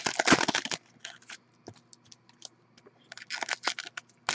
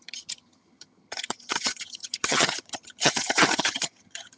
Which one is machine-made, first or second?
second